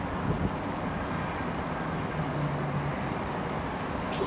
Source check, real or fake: real